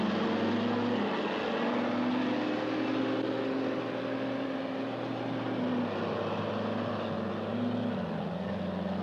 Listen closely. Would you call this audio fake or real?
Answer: real